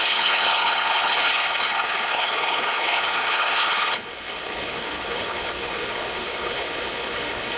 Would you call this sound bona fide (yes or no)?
no